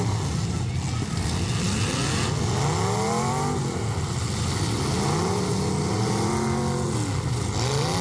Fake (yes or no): no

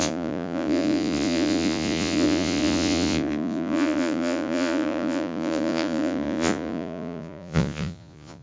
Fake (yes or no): yes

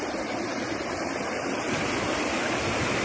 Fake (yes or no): no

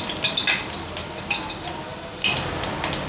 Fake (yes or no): no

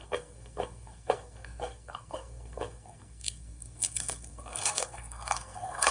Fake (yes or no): yes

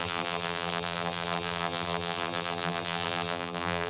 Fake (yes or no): yes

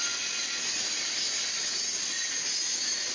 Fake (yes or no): no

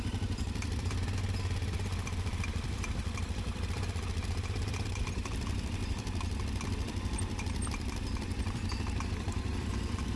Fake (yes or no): yes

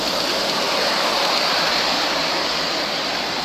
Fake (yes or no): no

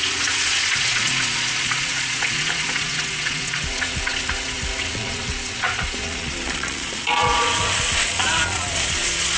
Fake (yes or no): yes